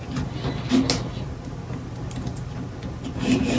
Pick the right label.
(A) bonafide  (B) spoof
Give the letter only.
A